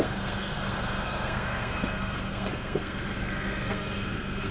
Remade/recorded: remade